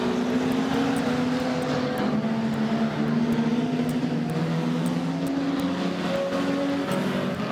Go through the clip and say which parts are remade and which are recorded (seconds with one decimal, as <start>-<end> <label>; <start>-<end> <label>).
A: 0.0-3.5 recorded; 3.5-4.0 remade; 4.0-7.5 recorded